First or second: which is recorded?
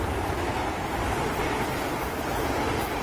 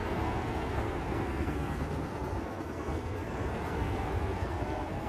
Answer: first